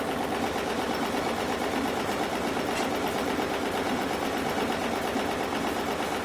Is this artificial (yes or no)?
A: no